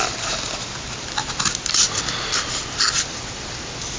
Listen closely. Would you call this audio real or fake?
real